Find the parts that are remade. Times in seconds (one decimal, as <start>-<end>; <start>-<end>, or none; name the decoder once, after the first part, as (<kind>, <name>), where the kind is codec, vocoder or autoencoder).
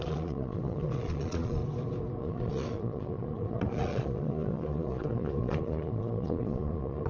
0.0-1.6 (vocoder, Vocos); 2.2-7.1